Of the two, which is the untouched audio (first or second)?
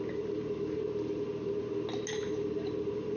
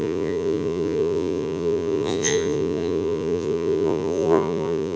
first